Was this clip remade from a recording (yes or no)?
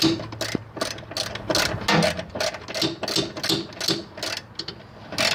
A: no